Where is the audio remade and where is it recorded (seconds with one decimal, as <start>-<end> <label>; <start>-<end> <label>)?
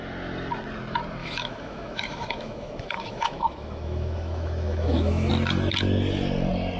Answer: 0.0-1.2 recorded; 1.2-5.3 remade; 5.3-6.8 recorded